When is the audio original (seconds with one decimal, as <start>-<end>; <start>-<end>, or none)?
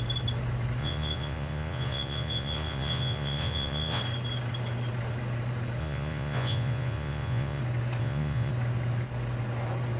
0.0-0.8; 4.0-5.8; 7.6-8.0; 8.5-10.0